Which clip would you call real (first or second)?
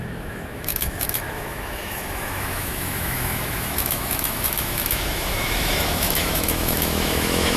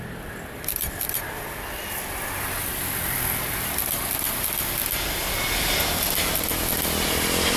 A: second